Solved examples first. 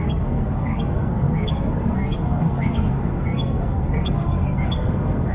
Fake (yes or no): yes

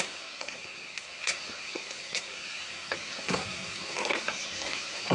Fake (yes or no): yes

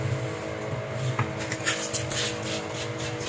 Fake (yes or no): no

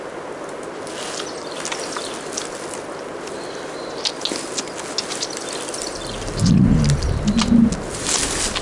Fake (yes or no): no